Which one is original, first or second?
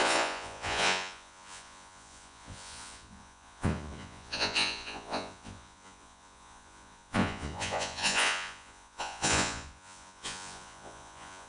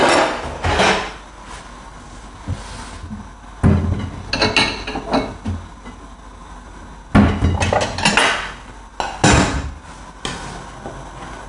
second